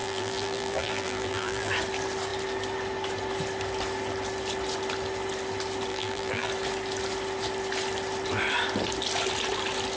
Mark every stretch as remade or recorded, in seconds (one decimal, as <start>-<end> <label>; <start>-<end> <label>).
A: 0.0-1.7 remade; 1.7-5.9 recorded; 5.9-6.5 remade; 6.5-10.0 recorded